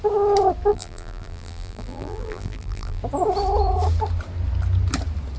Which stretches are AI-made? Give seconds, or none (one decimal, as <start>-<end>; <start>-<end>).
0.7-3.0